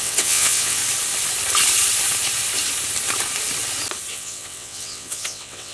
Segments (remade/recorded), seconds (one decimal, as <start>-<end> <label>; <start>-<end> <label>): 0.0-0.8 remade; 0.8-4.1 recorded; 4.1-5.7 remade